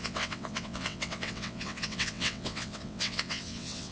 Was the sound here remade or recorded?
remade